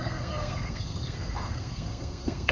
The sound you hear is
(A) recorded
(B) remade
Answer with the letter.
B